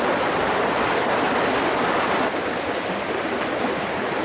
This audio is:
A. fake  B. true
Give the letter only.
B